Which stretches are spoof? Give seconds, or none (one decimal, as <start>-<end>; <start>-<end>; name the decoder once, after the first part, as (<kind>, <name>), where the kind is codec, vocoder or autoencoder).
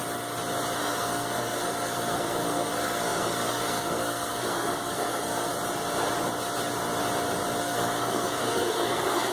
0.8-5.5 (codec, SNAC); 7.6-9.3